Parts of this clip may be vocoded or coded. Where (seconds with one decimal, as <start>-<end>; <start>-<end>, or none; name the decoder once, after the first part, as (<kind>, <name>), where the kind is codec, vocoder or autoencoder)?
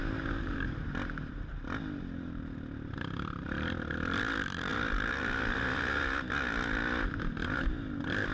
0.9-8.3 (vocoder, BigVGAN v2)